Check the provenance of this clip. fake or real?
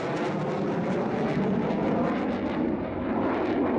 real